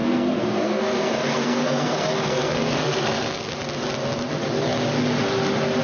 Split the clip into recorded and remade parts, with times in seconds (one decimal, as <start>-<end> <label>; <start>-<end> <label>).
0.0-3.5 remade; 3.5-5.8 recorded